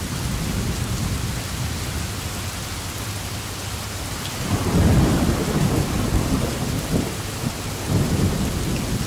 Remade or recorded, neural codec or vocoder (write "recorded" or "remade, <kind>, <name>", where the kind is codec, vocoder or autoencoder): recorded